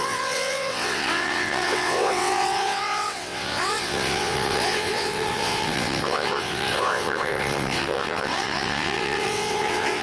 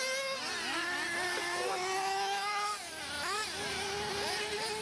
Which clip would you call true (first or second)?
second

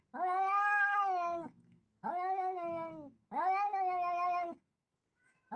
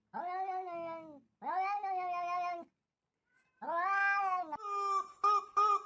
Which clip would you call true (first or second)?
second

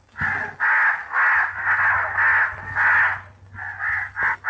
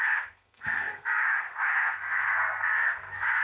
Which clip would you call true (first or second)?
first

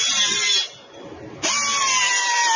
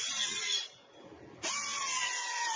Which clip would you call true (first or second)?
first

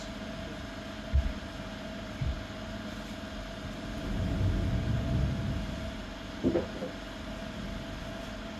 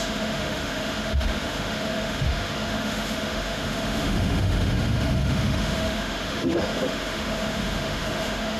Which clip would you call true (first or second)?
first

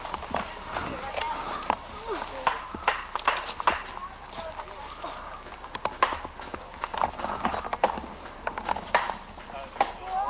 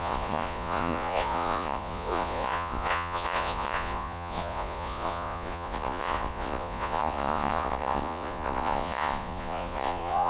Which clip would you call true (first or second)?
first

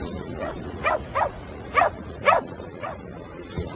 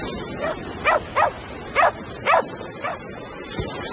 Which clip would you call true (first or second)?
second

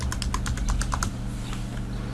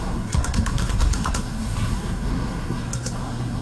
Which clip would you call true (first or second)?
first